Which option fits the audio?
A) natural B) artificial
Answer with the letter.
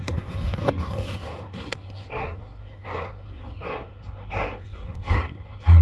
B